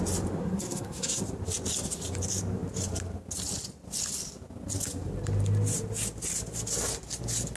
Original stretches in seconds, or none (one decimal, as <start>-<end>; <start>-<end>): 0.0-0.4; 1.2-7.6